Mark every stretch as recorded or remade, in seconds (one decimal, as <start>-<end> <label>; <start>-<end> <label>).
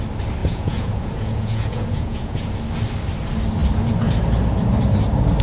0.0-0.4 recorded; 0.4-2.5 remade; 2.5-5.4 recorded